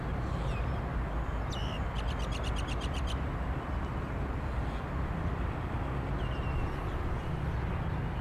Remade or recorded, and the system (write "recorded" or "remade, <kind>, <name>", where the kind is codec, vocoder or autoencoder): recorded